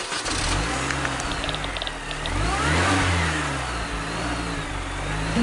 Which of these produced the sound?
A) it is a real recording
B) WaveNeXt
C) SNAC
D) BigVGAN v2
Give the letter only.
A